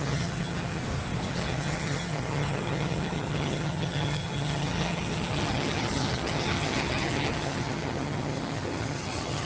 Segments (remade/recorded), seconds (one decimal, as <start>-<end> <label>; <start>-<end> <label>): 0.0-0.8 remade; 0.8-1.3 recorded; 1.3-9.5 remade